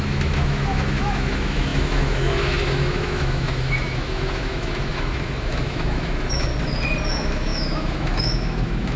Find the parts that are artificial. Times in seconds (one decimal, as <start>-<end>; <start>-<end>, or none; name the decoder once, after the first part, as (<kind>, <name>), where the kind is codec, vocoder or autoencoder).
0.0-6.5 (autoencoder, DAC-VAE); 7.1-9.0

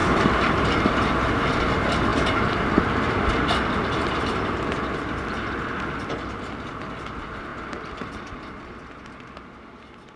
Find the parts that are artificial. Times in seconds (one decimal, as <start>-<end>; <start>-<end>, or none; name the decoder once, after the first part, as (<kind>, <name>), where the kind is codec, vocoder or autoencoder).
0.0-0.9 (vocoder, BigVGAN v2); 2.1-6.3

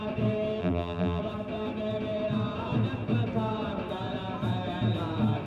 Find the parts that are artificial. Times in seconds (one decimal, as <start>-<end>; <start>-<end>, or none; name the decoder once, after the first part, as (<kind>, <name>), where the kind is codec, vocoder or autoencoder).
0.6-1.2 (vocoder, BigVGAN v2)

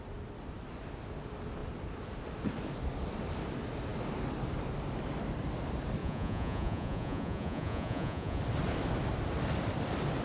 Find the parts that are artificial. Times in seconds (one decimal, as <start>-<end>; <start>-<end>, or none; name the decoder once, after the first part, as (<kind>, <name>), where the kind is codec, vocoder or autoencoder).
6.0-8.4 (vocoder, Vocos)

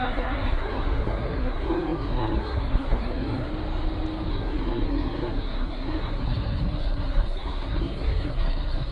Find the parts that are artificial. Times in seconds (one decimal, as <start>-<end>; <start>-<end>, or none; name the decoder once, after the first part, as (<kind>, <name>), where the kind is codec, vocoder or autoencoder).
0.0-3.5 (codec, SNAC); 4.3-8.9

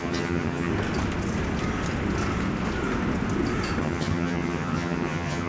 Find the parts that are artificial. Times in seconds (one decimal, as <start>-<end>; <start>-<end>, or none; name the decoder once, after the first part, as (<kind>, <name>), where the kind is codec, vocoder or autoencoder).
0.0-0.7 (vocoder, HiFi-GAN); 3.8-5.5